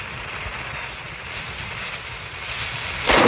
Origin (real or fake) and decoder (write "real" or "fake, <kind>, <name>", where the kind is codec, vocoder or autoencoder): real